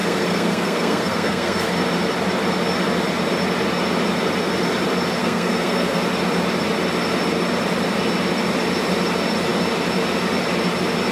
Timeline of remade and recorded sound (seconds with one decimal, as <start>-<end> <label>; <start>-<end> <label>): 0.0-1.7 remade; 1.7-5.2 recorded; 5.2-6.0 remade; 6.0-11.1 recorded